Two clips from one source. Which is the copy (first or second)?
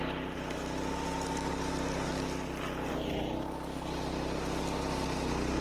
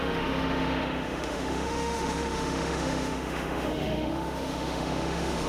second